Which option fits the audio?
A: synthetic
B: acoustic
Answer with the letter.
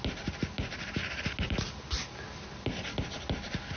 B